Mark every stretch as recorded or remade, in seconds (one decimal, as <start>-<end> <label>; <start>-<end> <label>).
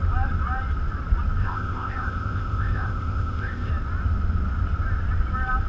0.0-1.4 recorded; 1.4-3.7 remade; 3.7-5.7 recorded